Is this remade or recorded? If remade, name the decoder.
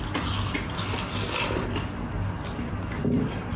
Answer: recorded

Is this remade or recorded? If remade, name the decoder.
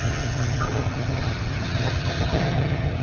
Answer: remade, vocoder, HiFi-GAN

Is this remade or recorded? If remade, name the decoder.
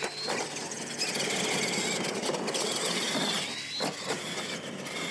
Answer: recorded